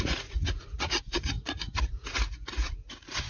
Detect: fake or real fake